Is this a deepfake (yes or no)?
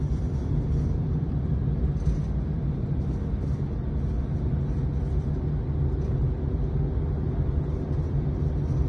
no